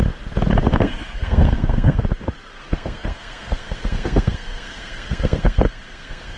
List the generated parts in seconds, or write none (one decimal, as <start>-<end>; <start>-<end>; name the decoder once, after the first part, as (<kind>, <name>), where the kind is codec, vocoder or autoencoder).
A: 0.7-2.0 (codec, SNAC); 2.5-6.4